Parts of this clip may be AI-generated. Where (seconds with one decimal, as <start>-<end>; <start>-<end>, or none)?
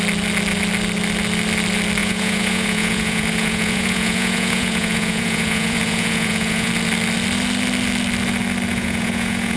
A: 2.0-6.7; 8.7-9.6